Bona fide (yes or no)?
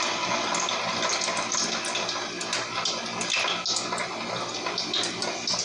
yes